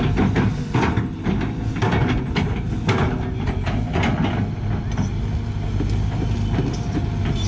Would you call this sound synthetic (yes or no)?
no